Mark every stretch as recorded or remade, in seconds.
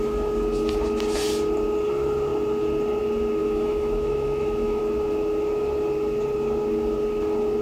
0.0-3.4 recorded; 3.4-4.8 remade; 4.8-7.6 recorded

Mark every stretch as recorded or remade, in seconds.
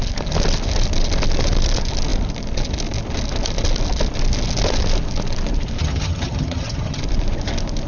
0.0-5.8 recorded; 5.8-7.0 remade; 7.0-7.9 recorded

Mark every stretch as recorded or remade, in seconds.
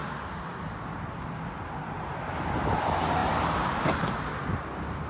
0.0-5.1 recorded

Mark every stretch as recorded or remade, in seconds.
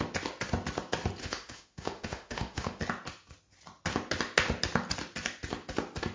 0.0-1.2 recorded; 1.2-2.8 remade; 2.8-6.1 recorded